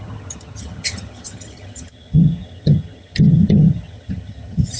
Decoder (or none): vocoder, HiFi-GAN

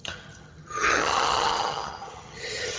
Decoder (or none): vocoder, HiFi-GAN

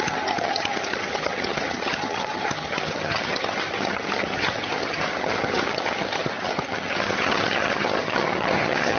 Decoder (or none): vocoder, HiFi-GAN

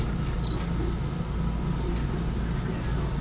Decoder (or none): none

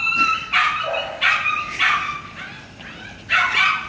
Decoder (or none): none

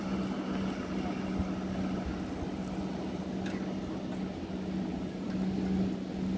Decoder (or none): none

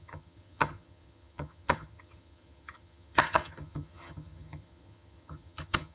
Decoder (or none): vocoder, HiFi-GAN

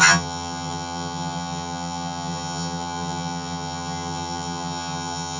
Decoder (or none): vocoder, HiFi-GAN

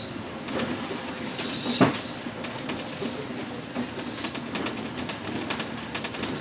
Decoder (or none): none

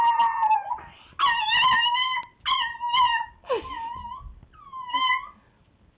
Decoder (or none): none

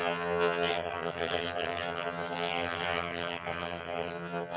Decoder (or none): vocoder, HiFi-GAN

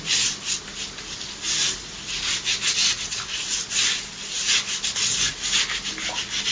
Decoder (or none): none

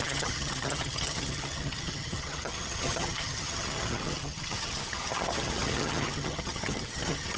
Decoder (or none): vocoder, HiFi-GAN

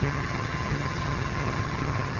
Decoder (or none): vocoder, HiFi-GAN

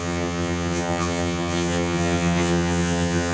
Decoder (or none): vocoder, HiFi-GAN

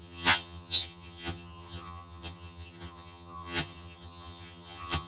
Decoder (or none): vocoder, HiFi-GAN